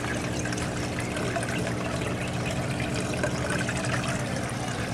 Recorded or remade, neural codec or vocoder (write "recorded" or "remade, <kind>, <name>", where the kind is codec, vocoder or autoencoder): recorded